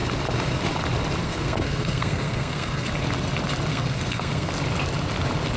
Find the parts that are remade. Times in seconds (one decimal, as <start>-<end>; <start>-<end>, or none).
1.2-2.9; 3.7-4.5